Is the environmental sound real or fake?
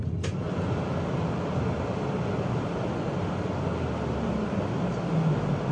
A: real